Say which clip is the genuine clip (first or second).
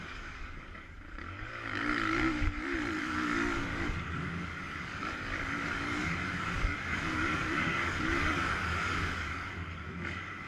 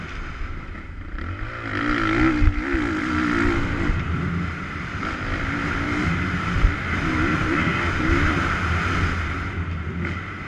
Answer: second